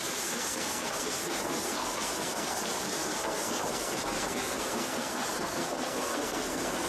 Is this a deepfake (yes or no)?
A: yes